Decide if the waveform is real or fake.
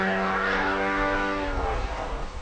fake